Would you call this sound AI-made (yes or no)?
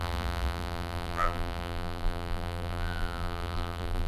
yes